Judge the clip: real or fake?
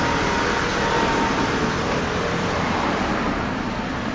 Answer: real